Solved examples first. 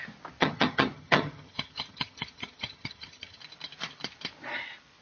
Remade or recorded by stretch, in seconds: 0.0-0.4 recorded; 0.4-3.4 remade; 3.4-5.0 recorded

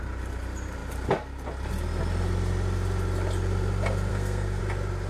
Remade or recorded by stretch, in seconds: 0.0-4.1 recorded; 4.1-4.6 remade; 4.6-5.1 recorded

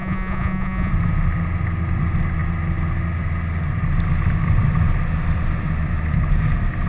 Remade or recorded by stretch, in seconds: 0.0-0.9 remade; 0.9-6.9 recorded

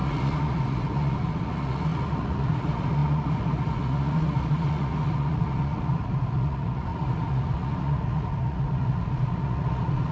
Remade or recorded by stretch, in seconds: 0.0-10.1 remade